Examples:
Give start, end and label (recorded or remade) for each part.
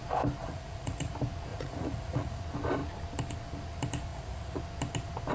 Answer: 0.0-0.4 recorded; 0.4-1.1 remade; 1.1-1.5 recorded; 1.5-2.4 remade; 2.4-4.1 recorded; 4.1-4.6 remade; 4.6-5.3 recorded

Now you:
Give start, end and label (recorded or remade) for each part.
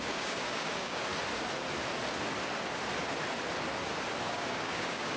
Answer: 0.0-1.1 remade; 1.1-4.2 recorded; 4.2-5.2 remade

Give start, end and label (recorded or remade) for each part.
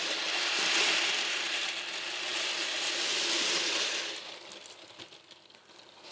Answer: 0.0-6.1 recorded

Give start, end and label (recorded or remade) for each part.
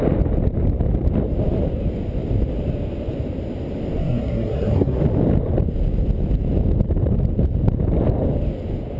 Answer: 0.0-4.0 recorded; 4.0-5.0 remade; 5.0-9.0 recorded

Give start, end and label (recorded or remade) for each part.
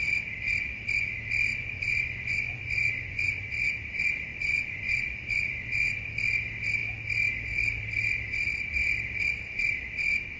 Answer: 0.0-1.5 recorded; 1.5-3.5 remade; 3.5-4.3 recorded; 4.3-6.0 remade; 6.0-10.4 recorded